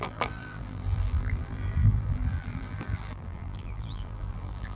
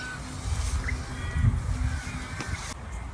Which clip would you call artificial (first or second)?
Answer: first